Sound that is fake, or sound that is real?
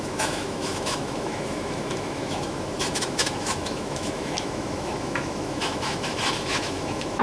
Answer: fake